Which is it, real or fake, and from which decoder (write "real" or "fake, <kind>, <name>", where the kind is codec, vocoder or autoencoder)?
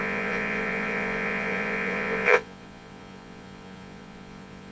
fake, vocoder, Vocos